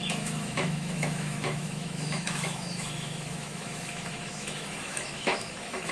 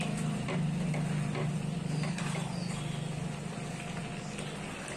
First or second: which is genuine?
second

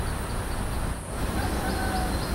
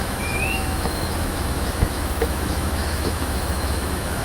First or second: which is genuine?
first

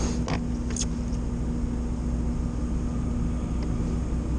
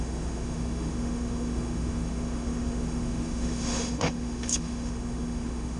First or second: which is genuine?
first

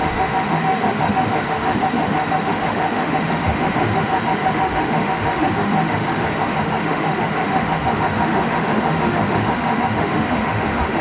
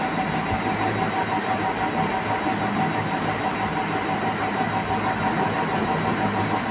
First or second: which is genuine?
second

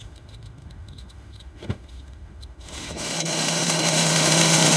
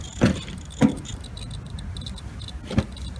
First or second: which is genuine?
second